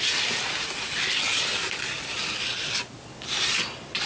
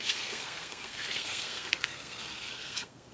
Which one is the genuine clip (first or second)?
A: first